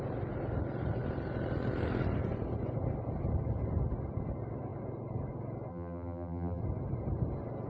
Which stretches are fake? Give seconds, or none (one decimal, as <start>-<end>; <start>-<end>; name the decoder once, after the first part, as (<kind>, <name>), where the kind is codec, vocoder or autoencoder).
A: 5.7-6.6 (vocoder, BigVGAN v2)